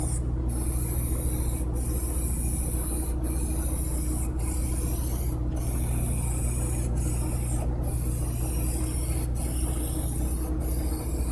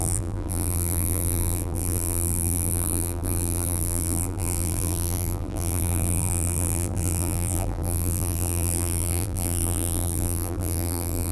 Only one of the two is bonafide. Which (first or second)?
first